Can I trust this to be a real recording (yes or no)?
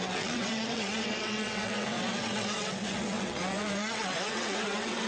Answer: no